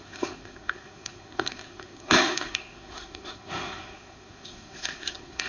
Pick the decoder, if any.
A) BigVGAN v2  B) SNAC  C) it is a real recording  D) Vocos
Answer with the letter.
B